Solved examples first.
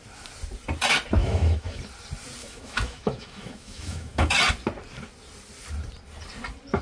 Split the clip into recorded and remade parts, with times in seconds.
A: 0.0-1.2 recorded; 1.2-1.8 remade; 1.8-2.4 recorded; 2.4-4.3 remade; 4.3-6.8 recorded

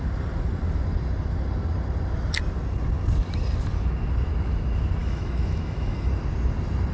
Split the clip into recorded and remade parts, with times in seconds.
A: 0.0-5.0 recorded; 5.0-6.1 remade; 6.1-6.9 recorded

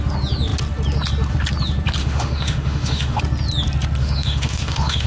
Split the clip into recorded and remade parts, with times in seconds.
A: 0.0-2.0 recorded; 2.0-3.2 remade; 3.2-4.0 recorded; 4.0-5.1 remade

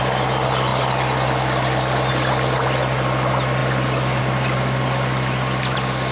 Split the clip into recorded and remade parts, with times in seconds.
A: 0.0-6.1 recorded